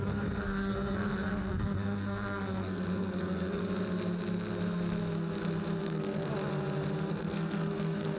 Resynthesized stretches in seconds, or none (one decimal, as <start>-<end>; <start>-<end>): 0.0-3.6; 5.8-6.3; 7.1-8.2